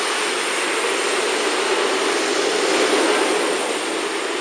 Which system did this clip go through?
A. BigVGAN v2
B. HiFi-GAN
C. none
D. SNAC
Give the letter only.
C